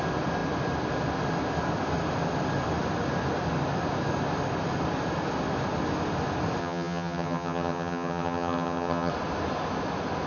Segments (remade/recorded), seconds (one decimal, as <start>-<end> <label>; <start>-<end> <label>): 0.0-6.6 recorded; 6.6-9.1 remade; 9.1-10.3 recorded